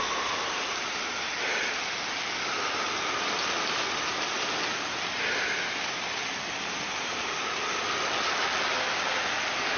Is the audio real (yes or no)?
yes